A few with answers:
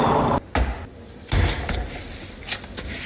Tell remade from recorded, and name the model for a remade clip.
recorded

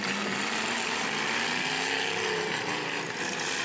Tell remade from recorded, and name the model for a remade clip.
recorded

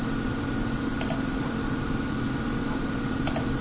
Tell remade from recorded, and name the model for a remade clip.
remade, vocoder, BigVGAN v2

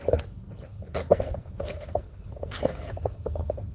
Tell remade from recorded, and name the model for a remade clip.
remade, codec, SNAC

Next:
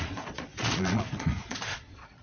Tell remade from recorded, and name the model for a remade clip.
remade, vocoder, Vocos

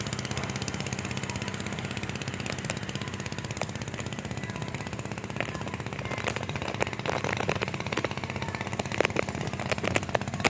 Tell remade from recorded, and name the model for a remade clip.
recorded